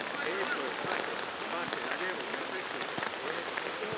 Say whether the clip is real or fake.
real